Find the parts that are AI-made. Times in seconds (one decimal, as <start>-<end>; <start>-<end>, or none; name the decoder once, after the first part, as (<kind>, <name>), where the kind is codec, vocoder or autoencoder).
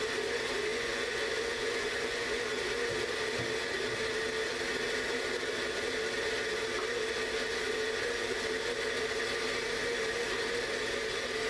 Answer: 0.7-2.4 (vocoder, Vocos)